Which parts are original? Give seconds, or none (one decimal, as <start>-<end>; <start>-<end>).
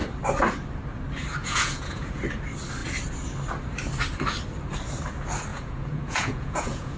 0.0-1.4; 2.2-5.5